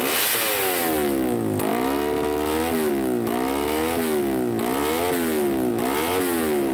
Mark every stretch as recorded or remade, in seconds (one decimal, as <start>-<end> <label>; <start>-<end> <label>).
0.0-6.7 recorded